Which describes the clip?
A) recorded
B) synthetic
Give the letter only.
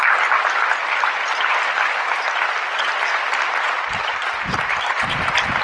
A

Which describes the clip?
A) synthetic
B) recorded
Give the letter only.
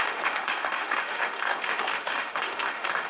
A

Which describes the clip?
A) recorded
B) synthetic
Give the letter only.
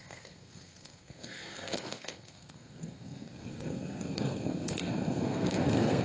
B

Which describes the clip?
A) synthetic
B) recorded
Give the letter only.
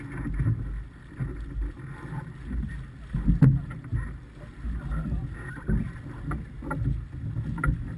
B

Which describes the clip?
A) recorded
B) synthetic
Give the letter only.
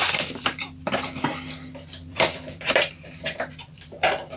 B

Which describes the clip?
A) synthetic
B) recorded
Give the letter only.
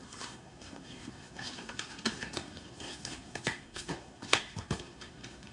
A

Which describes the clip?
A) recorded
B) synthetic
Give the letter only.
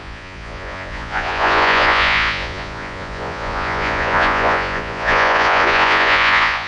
B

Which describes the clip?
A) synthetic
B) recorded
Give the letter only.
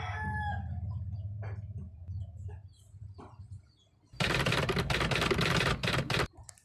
B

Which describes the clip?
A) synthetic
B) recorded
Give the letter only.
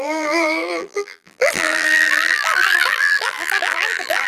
A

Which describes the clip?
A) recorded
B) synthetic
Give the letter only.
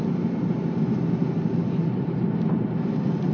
A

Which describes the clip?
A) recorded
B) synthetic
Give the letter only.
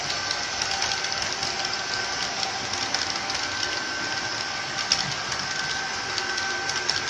A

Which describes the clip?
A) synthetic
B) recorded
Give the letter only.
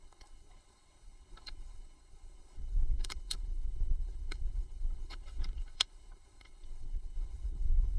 A